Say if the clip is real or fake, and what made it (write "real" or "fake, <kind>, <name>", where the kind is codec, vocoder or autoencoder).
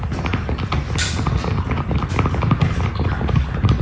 real